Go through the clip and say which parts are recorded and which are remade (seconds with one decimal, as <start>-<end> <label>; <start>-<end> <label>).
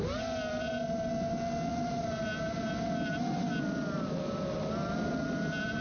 0.0-5.8 recorded